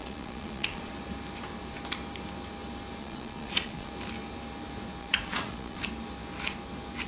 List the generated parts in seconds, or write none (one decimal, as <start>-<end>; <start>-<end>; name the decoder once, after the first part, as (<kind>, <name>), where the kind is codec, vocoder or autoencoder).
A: 0.0-0.9 (vocoder, Vocos); 3.0-3.9; 5.0-5.8